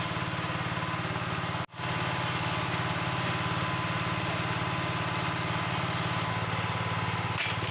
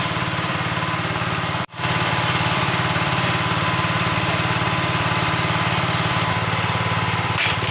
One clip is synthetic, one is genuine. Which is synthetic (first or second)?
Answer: second